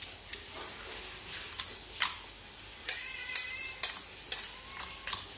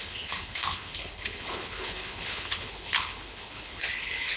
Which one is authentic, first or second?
first